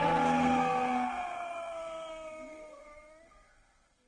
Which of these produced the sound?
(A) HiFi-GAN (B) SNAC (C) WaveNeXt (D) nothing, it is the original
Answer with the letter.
B